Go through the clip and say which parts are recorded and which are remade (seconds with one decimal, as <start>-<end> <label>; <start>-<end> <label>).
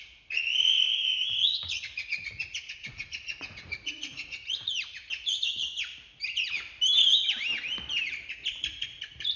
0.0-5.6 remade; 5.6-8.5 recorded; 8.5-9.4 remade